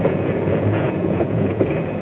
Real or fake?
fake